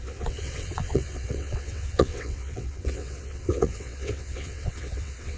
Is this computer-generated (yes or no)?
yes